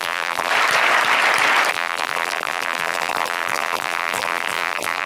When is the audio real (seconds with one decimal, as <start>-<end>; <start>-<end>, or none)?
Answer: 0.5-1.7